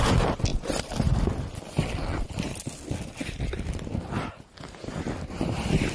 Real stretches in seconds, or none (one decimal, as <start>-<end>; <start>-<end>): 0.0-5.9